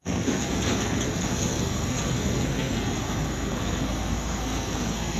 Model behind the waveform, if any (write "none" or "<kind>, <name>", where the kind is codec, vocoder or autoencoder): codec, SNAC